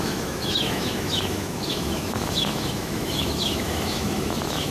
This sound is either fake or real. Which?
fake